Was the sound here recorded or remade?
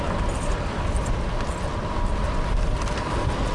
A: recorded